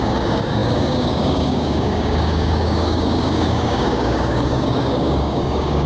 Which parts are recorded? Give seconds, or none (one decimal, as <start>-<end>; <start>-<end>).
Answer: none